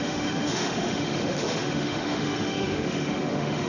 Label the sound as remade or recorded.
remade